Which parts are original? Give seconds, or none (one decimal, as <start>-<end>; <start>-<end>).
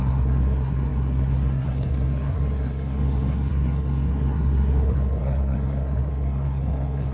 none